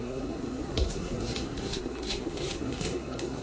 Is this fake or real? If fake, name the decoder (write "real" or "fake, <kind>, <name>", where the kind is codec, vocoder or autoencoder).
fake, codec, SNAC